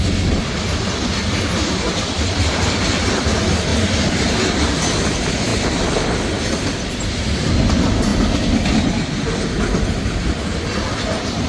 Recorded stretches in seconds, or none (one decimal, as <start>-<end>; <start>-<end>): 3.7-4.6; 5.5-6.9; 8.1-10.6